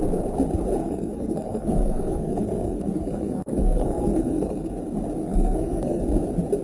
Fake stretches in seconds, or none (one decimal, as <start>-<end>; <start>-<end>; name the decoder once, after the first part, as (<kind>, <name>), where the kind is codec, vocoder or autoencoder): 0.8-4.8 (codec, SNAC); 5.2-6.0